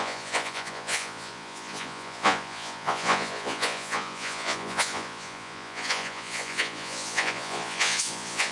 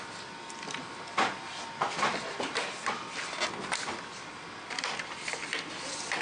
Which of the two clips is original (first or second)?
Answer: second